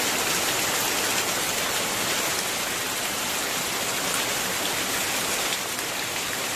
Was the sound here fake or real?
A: real